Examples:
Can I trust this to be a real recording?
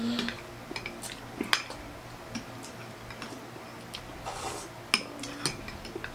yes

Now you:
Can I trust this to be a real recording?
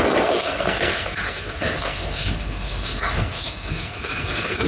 no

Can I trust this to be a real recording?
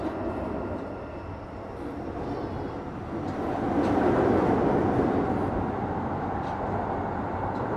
yes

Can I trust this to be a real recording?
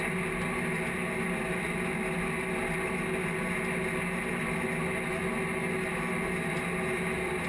yes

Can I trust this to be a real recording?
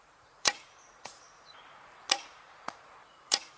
no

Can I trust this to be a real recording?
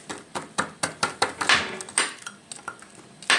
yes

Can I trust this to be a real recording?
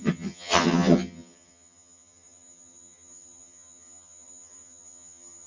no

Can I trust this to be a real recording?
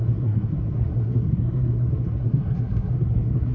no